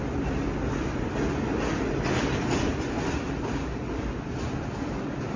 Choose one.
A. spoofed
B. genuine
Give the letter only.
B